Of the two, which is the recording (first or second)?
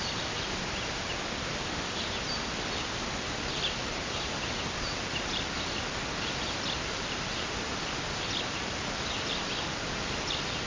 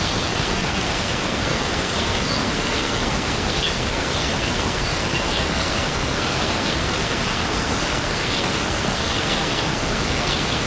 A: first